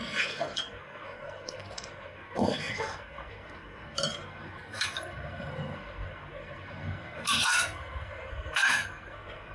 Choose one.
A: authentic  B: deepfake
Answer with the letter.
B